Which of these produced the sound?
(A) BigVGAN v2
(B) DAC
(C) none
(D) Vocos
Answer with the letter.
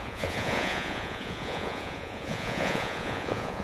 D